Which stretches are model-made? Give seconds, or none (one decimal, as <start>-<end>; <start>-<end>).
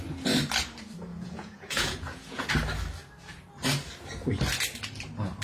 1.1-2.5